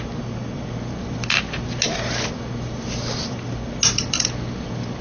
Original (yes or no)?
yes